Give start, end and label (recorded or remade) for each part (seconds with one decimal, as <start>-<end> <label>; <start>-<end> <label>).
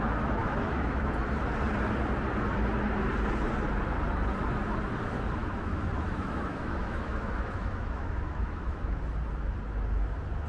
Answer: 0.0-0.4 recorded; 0.4-1.1 remade; 1.1-5.4 recorded; 5.4-9.0 remade; 9.0-10.5 recorded